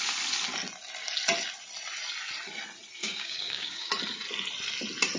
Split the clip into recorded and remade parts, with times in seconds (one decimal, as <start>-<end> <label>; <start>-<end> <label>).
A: 0.0-3.0 recorded; 3.0-3.9 remade; 3.9-5.2 recorded